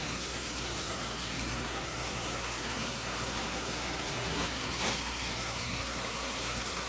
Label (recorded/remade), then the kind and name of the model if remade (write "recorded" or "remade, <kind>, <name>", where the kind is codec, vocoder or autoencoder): remade, codec, SNAC